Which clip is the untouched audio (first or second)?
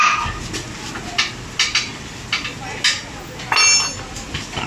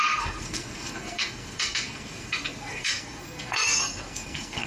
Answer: first